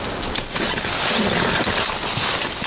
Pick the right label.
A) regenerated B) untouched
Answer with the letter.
B